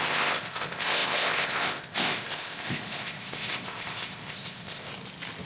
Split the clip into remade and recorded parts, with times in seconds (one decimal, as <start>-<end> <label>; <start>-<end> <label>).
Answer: 0.0-4.9 remade; 4.9-5.5 recorded